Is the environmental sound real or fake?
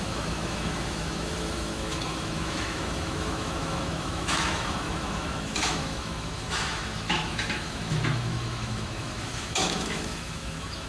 fake